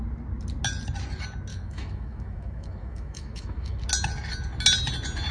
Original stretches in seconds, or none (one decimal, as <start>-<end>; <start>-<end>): 0.0-1.5; 3.8-5.3